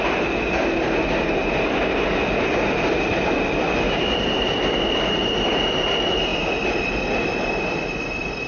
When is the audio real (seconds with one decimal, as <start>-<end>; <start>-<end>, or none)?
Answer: 0.0-8.5